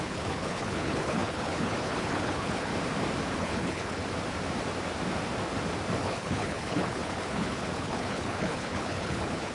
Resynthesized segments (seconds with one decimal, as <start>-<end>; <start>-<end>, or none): 0.0-2.7; 3.4-4.0; 6.0-9.5